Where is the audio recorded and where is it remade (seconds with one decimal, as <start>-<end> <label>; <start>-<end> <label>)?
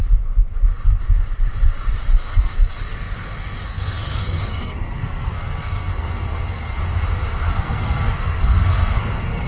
0.0-2.1 recorded; 2.1-6.8 remade; 6.8-7.5 recorded; 7.5-9.5 remade